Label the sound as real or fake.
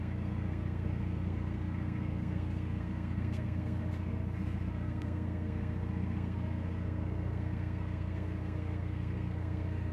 fake